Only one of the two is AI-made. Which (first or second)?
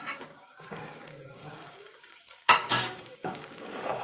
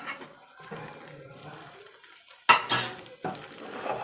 first